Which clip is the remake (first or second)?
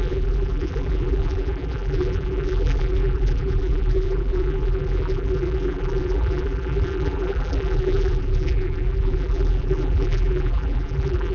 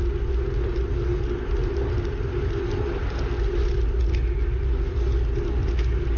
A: first